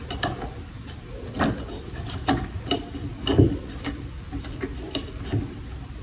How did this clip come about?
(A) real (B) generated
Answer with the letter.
A